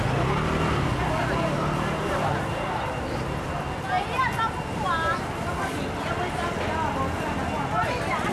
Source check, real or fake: real